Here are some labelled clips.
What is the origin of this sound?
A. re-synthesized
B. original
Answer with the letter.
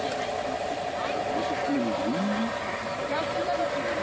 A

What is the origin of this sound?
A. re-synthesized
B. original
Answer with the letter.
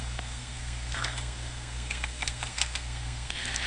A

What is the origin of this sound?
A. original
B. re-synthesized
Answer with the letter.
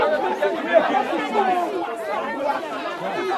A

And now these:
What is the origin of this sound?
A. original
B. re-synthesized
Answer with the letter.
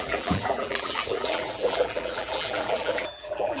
B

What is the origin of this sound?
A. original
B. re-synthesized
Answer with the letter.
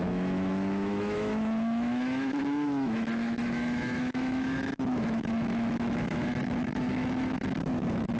B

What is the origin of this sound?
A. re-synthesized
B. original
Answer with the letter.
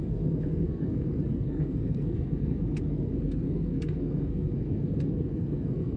A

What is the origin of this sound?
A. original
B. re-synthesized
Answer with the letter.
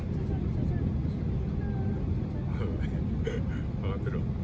A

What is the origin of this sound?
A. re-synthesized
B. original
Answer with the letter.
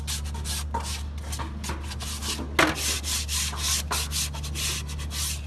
B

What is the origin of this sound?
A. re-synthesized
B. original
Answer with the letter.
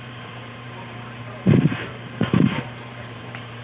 A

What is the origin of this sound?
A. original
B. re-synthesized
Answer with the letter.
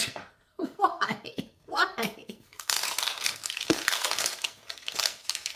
B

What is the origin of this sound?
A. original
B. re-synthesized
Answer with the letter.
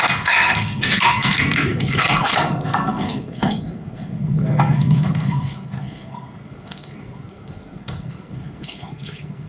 B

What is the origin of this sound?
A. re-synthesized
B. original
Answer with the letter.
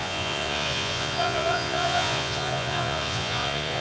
A